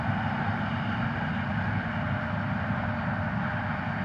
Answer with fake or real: real